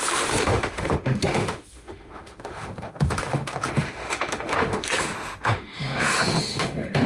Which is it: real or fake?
fake